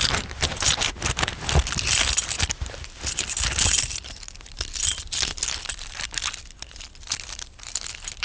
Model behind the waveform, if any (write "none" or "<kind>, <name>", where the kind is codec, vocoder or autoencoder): none